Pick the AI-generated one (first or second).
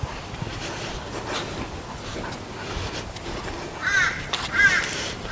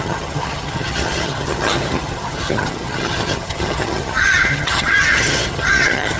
second